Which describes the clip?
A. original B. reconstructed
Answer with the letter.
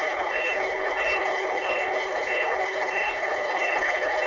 B